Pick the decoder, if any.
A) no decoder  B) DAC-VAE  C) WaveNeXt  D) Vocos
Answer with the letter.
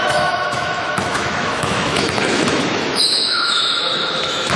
B